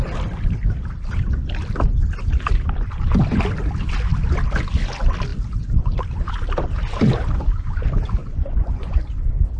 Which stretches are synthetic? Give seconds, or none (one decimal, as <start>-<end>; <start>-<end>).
8.2-9.0